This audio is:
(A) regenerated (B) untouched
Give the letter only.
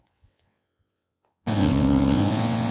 A